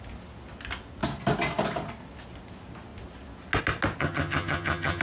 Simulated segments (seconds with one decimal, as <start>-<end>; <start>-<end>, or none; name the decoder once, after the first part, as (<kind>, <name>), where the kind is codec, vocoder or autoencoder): 4.0-5.0 (vocoder, HiFi-GAN)